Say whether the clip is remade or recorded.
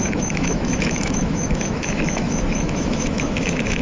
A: remade